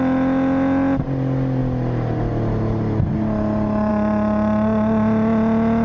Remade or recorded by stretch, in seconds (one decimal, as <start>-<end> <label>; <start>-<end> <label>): 0.0-5.8 recorded